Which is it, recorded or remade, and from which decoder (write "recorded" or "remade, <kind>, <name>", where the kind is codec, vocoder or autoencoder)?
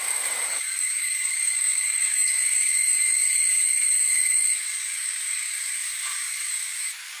remade, codec, DAC